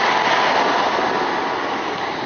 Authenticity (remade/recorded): recorded